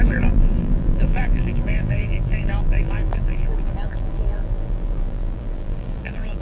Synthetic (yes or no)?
yes